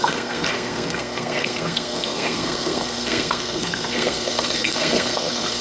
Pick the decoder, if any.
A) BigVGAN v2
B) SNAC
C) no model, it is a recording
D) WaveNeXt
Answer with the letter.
B